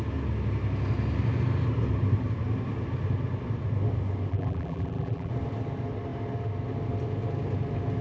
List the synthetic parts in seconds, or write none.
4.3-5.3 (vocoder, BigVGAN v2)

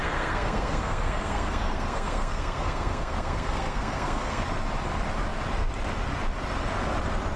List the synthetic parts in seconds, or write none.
0.0-4.4 (codec, SNAC)

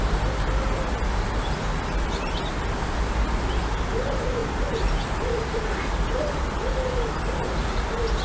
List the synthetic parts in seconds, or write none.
4.4-5.6 (vocoder, BigVGAN v2)

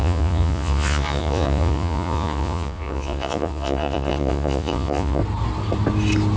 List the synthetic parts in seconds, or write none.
0.0-5.2 (vocoder, Vocos)

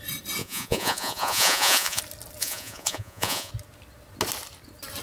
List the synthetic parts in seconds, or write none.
0.4-2.0 (vocoder, Vocos); 2.4-3.5